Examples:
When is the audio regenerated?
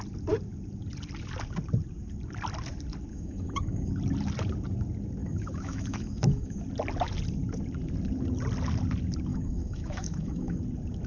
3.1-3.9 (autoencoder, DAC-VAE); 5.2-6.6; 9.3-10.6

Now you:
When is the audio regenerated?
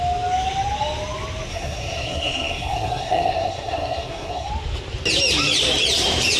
1.5-4.5 (codec, SNAC)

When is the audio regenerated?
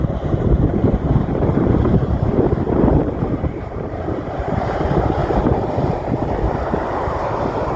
0.0-2.3 (vocoder, BigVGAN v2); 3.2-5.2; 6.5-7.8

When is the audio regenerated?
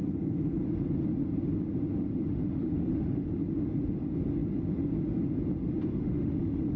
2.3-3.4 (autoencoder, DAC-VAE); 5.9-6.8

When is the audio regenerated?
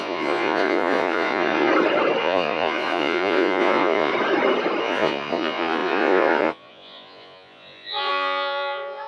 0.0-1.7 (vocoder, Vocos); 2.2-4.1; 4.8-9.1